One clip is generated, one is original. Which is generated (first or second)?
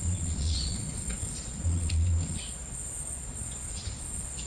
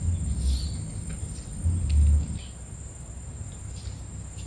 first